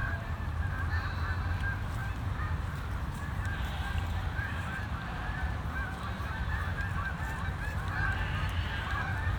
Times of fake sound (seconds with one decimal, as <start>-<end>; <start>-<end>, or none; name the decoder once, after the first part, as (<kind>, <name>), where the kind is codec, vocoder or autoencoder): 0.0-0.7 (vocoder, BigVGAN v2); 2.0-6.8